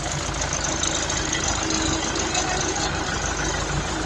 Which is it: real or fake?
real